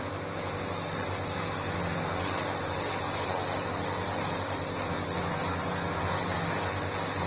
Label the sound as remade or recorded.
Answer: recorded